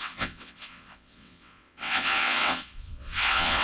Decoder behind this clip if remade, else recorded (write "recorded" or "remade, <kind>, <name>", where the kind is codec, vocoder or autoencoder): remade, vocoder, WaveNeXt